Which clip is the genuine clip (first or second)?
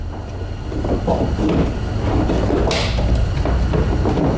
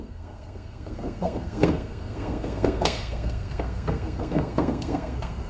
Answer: first